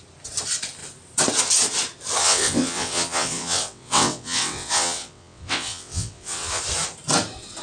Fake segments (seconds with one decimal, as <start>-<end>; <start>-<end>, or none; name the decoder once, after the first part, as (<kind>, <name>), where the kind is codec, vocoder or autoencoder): 2.2-6.6 (vocoder, WaveNeXt)